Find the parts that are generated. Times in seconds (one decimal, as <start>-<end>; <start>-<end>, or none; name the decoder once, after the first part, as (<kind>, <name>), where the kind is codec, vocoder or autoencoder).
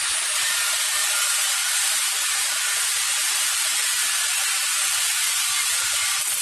5.1-5.7 (vocoder, BigVGAN v2)